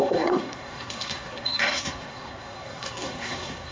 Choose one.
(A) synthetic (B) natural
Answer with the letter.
A